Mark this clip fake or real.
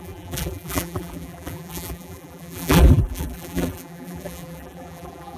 fake